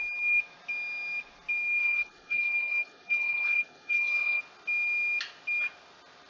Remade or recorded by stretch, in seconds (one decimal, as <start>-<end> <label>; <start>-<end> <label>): 0.0-1.8 recorded; 1.8-4.4 remade; 4.4-6.3 recorded